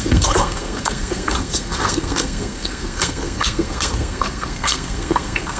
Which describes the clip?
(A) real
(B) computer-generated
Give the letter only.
B